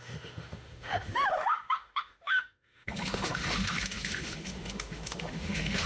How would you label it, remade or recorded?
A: remade